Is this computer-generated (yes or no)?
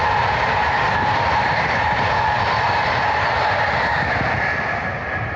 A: no